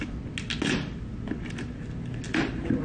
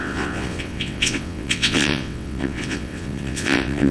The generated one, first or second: second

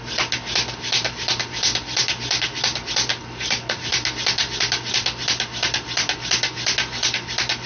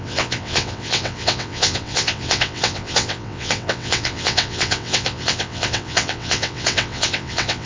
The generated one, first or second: second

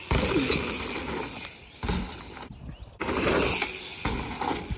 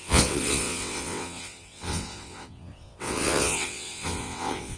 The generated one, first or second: second